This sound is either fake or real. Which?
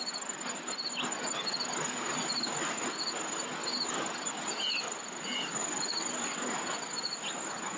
real